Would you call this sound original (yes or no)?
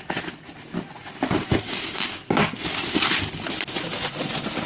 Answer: yes